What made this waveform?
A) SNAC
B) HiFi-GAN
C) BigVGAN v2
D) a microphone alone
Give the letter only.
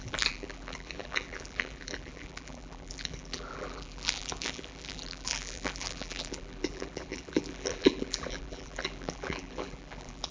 C